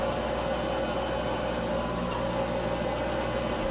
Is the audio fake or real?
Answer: real